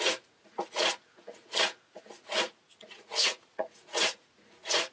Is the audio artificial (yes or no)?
yes